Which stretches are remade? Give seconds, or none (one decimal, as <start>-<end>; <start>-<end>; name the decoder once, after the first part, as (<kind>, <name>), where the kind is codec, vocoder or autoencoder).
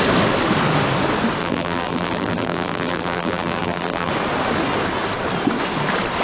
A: 1.4-4.1 (vocoder, BigVGAN v2)